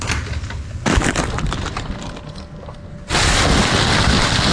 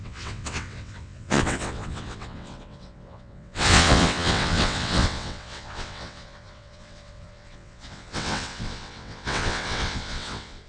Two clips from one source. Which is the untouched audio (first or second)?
first